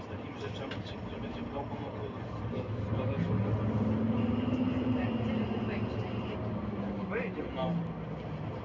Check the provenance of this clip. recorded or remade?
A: recorded